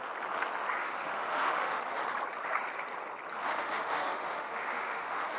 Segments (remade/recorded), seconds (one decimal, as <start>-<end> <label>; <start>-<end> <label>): 0.0-0.8 recorded; 0.8-1.8 remade; 1.8-3.3 recorded; 3.3-5.4 remade